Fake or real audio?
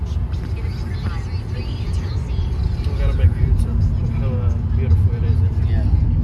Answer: real